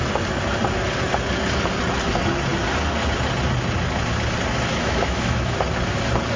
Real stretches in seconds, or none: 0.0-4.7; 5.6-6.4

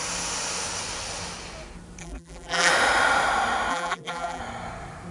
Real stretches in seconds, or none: 0.0-2.0; 2.7-3.7; 4.4-5.1

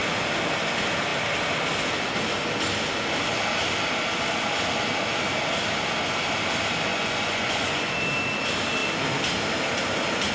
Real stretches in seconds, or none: 0.0-6.9; 7.9-10.3

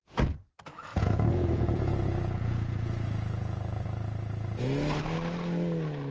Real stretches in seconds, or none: 0.0-0.9; 4.6-6.1

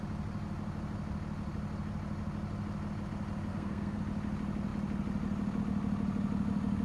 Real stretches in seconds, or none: 0.0-3.5; 4.0-6.8